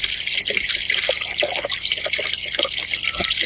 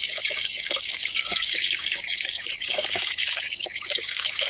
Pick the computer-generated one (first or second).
second